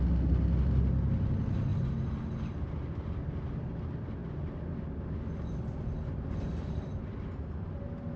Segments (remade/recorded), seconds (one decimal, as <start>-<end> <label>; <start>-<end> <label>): 0.0-8.2 recorded

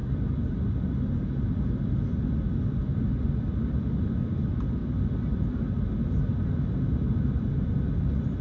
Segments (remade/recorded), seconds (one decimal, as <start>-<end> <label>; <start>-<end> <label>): 0.0-8.4 recorded

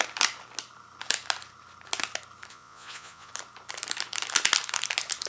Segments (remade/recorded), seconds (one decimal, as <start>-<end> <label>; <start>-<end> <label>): 0.0-2.5 recorded; 2.5-3.3 remade; 3.3-5.3 recorded

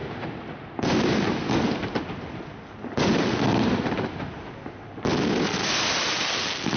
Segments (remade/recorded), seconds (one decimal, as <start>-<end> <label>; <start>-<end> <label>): 0.0-6.8 recorded

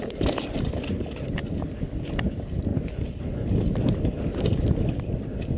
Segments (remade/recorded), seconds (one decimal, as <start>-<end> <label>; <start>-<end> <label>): 0.0-5.6 recorded

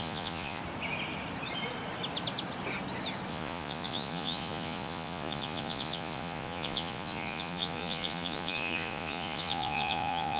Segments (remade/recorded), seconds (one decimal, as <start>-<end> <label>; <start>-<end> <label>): 0.0-0.6 remade; 0.6-3.3 recorded; 3.3-10.4 remade

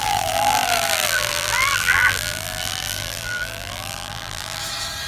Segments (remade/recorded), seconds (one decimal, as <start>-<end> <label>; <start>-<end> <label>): 0.0-4.6 remade; 4.6-5.1 recorded